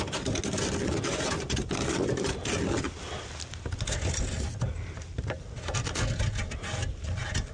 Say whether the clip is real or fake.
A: real